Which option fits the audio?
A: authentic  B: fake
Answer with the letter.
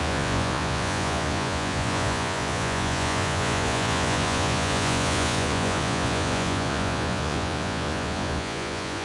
B